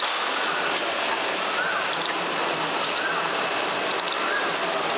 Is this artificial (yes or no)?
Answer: no